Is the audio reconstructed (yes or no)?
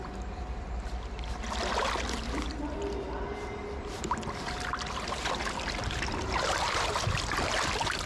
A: no